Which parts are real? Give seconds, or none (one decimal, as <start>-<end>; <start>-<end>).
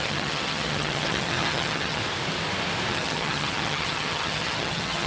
2.0-2.9